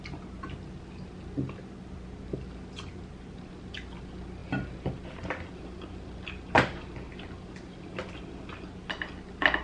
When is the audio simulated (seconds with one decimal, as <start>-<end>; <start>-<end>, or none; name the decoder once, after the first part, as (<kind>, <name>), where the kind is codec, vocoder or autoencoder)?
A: none